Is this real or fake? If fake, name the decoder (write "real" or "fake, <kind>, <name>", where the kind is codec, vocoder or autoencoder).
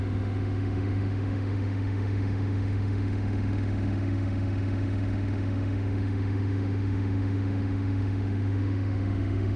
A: fake, autoencoder, DAC-VAE